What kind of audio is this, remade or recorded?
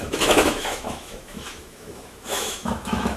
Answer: remade